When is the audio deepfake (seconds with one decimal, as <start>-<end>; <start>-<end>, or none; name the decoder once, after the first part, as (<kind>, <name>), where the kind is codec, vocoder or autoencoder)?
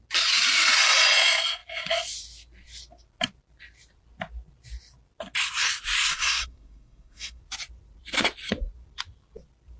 6.1-7.4 (codec, SNAC)